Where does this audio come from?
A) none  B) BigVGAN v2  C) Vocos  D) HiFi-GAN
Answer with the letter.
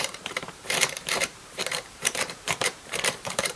B